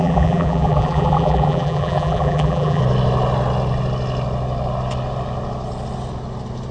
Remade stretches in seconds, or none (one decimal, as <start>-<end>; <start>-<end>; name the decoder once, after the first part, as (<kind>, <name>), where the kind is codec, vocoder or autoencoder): 0.0-2.8 (vocoder, BigVGAN v2)